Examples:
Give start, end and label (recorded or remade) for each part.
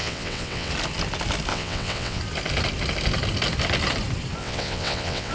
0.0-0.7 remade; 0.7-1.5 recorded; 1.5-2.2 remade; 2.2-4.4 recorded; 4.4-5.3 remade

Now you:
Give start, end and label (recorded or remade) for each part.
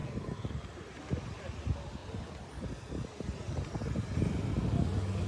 0.0-5.3 recorded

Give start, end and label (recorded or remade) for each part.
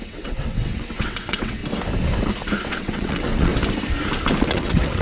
0.0-1.6 remade; 1.6-2.7 recorded; 2.7-3.5 remade; 3.5-4.4 recorded; 4.4-5.0 remade